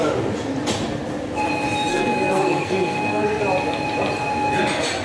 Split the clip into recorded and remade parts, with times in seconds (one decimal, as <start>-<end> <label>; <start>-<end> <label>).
0.0-1.9 recorded; 1.9-3.4 remade; 3.4-5.0 recorded

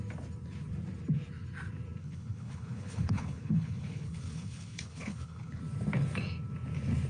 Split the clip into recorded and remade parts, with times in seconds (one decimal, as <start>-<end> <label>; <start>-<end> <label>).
0.0-2.0 recorded; 2.0-5.6 remade; 5.6-7.1 recorded

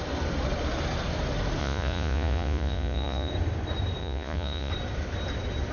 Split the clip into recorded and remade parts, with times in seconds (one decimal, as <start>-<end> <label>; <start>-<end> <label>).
0.0-1.6 recorded; 1.6-3.3 remade; 3.3-4.0 recorded; 4.0-4.7 remade; 4.7-5.7 recorded

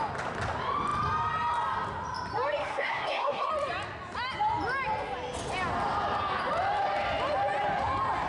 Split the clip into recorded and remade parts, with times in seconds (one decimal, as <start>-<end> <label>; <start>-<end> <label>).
0.0-2.6 recorded; 2.6-3.5 remade; 3.5-8.3 recorded

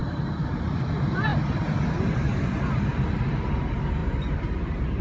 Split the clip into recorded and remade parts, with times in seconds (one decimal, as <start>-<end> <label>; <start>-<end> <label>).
0.0-0.6 remade; 0.6-4.0 recorded; 4.0-5.0 remade